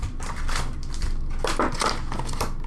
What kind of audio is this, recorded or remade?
recorded